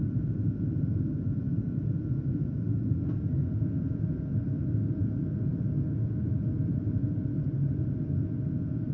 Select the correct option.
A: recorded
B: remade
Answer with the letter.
A